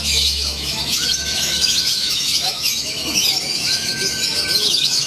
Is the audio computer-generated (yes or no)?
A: yes